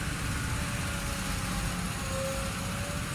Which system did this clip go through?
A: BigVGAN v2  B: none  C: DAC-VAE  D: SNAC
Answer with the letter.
B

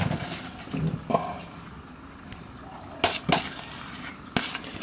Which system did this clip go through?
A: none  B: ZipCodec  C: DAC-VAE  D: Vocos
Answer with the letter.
A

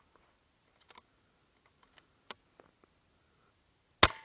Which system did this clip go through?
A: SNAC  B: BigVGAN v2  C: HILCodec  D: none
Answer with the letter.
D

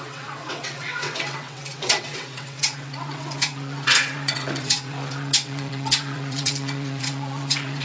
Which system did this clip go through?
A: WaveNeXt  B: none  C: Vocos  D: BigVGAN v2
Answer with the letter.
A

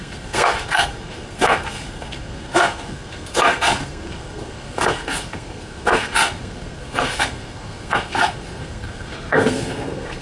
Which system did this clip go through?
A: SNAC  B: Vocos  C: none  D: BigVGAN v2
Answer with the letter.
A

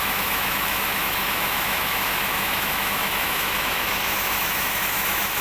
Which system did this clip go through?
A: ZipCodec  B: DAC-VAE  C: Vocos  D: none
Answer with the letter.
B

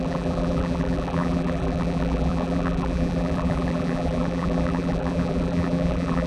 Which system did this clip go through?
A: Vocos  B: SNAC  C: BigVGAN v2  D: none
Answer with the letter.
C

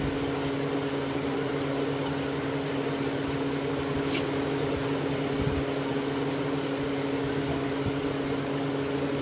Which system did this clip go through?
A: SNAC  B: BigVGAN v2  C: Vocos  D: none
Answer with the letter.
D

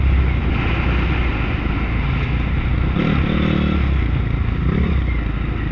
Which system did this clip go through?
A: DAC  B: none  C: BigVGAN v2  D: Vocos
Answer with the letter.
B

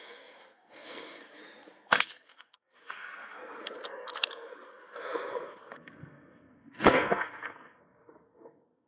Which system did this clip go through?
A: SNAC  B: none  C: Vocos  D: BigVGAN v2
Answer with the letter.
A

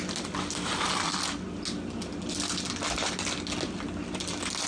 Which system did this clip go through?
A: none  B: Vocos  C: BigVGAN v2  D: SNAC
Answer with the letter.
A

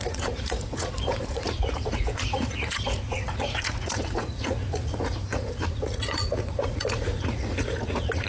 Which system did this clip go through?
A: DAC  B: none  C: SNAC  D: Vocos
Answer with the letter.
D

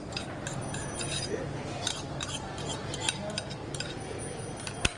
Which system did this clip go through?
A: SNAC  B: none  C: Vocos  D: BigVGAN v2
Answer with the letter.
B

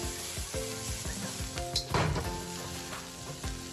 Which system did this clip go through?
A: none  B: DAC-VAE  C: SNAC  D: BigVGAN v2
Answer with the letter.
A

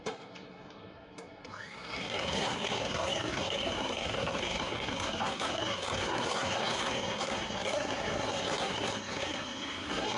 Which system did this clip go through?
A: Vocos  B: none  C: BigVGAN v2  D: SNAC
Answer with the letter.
D